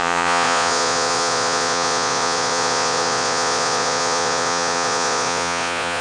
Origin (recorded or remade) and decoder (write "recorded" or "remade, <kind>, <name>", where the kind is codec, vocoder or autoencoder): remade, vocoder, Vocos